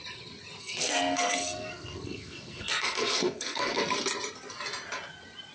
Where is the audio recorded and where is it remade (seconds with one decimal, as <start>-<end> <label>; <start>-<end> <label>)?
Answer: 0.0-0.6 recorded; 0.6-3.8 remade; 3.8-5.5 recorded